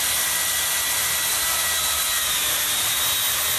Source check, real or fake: real